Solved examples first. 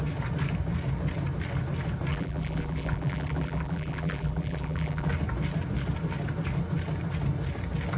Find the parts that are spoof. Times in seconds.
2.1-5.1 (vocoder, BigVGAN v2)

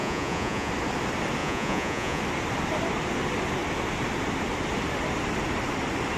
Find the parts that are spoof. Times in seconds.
0.0-0.7 (vocoder, Vocos); 1.4-2.2

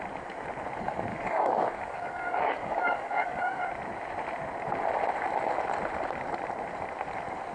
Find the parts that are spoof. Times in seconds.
1.1-3.6 (codec, DAC)

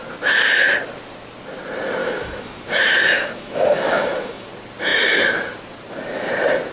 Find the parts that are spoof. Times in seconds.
2.0-4.5 (autoencoder, DAC-VAE)

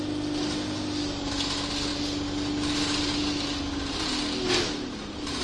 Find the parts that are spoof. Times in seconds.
none

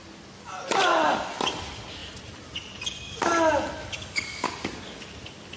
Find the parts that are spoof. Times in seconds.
3.9-4.5 (codec, DAC)

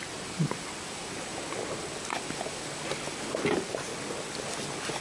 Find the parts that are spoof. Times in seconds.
0.0-1.3 (vocoder, BigVGAN v2); 3.5-3.9

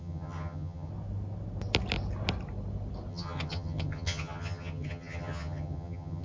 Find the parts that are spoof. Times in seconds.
0.0-0.9 (vocoder, HiFi-GAN); 3.1-6.2